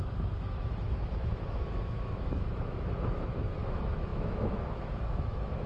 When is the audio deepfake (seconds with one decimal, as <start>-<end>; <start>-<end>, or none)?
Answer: 0.0-5.7